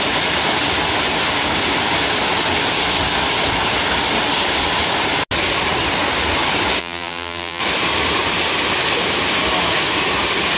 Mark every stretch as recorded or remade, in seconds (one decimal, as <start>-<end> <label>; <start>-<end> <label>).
0.0-6.8 recorded; 6.8-7.6 remade; 7.6-10.6 recorded